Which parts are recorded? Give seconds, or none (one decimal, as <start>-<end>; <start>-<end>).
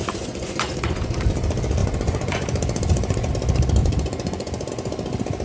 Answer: 1.2-1.8; 3.3-3.8; 4.7-5.4